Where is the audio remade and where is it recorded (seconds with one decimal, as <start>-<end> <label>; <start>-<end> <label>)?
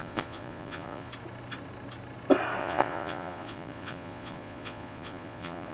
0.0-1.1 remade; 1.1-2.6 recorded; 2.6-5.7 remade